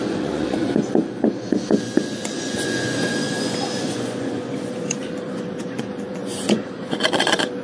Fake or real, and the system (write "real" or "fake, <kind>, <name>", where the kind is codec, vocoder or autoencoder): fake, vocoder, Vocos